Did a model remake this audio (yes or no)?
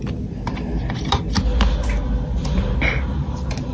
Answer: no